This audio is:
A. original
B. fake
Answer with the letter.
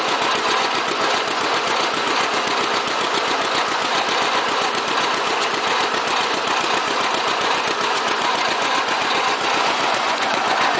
B